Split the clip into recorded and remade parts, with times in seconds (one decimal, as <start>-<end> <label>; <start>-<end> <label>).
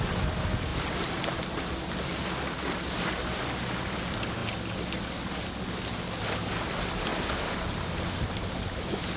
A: 0.0-0.7 recorded; 0.7-1.4 remade; 1.4-7.1 recorded; 7.1-8.4 remade; 8.4-9.2 recorded